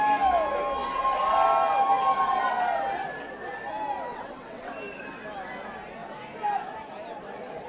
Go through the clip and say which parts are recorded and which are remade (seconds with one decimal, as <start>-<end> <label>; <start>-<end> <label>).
0.0-4.1 recorded; 4.1-4.7 remade; 4.7-7.7 recorded